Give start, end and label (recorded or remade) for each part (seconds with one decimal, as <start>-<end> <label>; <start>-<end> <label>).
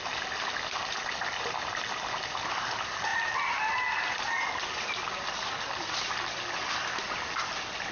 0.0-7.9 recorded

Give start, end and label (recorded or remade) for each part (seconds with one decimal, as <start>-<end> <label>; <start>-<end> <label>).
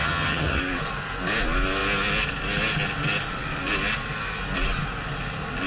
0.0-0.6 remade; 0.6-5.7 recorded